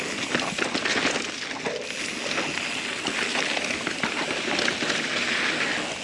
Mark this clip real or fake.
real